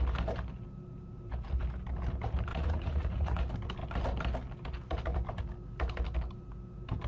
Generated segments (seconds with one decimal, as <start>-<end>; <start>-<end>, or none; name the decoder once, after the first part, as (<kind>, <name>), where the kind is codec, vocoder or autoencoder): 2.5-3.4 (vocoder, Vocos)